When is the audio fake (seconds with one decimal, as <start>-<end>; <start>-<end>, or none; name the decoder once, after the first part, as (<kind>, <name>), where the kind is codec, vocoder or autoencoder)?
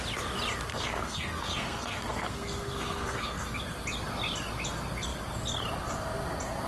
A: 0.7-3.6 (codec, SNAC)